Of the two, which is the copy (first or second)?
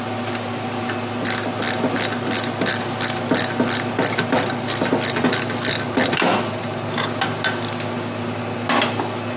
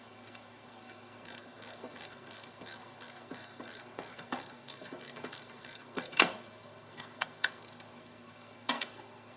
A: second